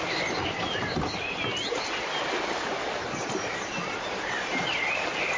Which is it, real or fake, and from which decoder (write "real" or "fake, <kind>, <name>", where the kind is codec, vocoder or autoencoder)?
real